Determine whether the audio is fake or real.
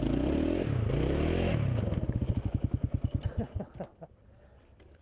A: real